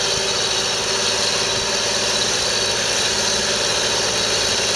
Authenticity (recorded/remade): recorded